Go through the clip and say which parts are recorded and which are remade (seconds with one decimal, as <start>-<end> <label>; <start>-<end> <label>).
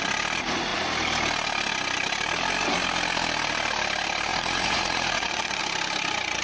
0.0-4.3 recorded; 4.3-5.6 remade; 5.6-6.4 recorded